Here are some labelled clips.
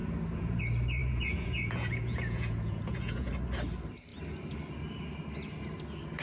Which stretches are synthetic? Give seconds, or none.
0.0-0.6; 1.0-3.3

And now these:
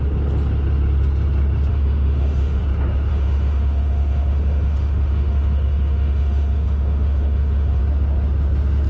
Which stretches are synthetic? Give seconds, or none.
1.7-2.6; 3.1-7.8

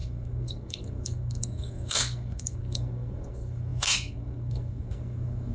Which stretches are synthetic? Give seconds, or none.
0.0-5.5

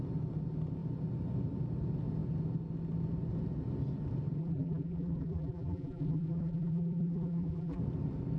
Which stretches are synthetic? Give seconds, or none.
4.4-7.8

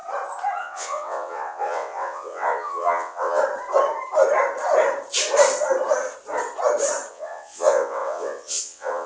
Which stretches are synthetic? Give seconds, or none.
0.6-3.4; 7.1-9.1

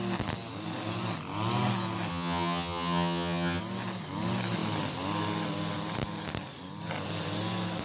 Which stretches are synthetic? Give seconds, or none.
2.1-3.6

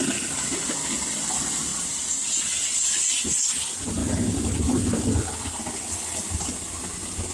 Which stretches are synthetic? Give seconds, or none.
none

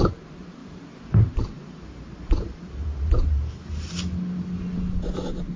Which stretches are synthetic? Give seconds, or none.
0.6-4.0